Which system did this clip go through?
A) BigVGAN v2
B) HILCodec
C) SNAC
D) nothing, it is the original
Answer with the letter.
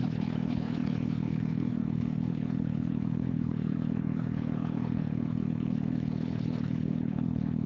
B